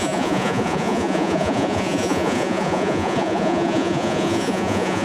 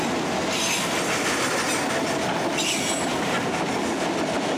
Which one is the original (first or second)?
second